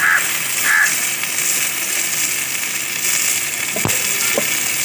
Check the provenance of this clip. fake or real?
real